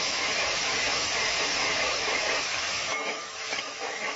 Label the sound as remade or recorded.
remade